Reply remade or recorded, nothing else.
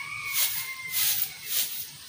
remade